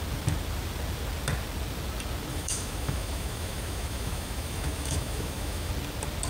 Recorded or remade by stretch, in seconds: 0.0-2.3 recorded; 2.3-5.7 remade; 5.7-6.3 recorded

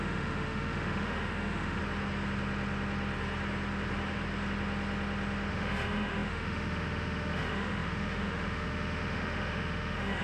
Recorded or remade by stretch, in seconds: 0.0-1.8 remade; 1.8-5.5 recorded; 5.5-10.2 remade

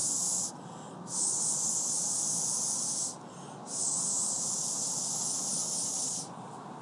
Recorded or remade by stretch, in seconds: 0.0-5.6 recorded; 5.6-6.8 remade

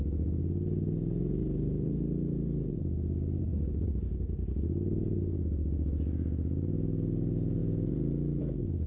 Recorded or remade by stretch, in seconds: 0.0-1.4 recorded; 1.4-2.8 remade; 2.8-3.4 recorded; 3.4-4.0 remade; 4.0-8.9 recorded

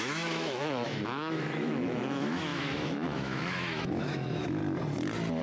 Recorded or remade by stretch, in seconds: 0.0-4.6 remade; 4.6-5.4 recorded

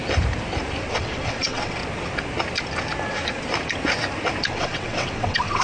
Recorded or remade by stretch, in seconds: 0.0-0.9 recorded; 0.9-1.8 remade; 1.8-4.5 recorded; 4.5-5.6 remade

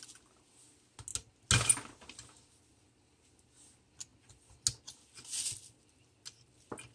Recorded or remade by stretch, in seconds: 0.0-6.9 recorded